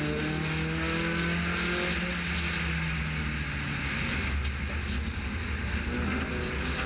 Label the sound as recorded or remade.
recorded